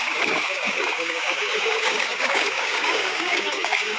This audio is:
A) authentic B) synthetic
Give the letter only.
B